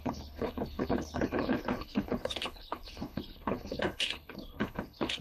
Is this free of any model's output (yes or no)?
no